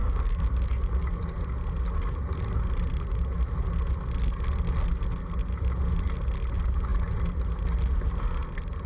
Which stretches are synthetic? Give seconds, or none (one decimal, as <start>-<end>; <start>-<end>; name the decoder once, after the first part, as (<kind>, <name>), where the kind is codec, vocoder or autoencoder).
0.0-0.6 (codec, DAC)